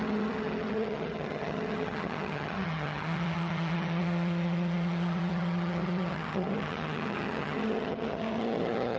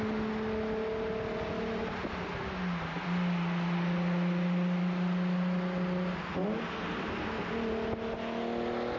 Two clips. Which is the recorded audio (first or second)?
second